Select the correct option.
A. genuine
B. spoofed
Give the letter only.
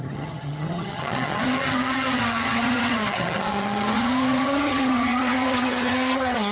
B